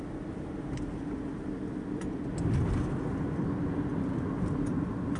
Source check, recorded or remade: recorded